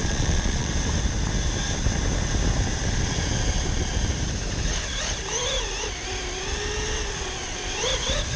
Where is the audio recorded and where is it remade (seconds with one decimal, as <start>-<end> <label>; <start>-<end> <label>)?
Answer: 0.0-0.7 remade; 0.7-8.4 recorded